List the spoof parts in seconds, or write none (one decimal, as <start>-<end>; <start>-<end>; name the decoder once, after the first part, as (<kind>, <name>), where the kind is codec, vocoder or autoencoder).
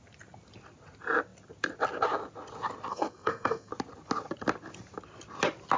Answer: 2.9-3.7 (codec, SNAC)